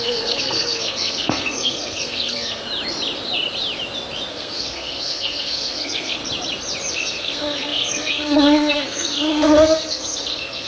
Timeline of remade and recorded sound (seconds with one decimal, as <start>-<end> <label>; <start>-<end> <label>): 0.0-2.6 remade; 2.6-4.3 recorded; 4.3-6.2 remade; 6.2-6.9 recorded; 6.9-10.7 remade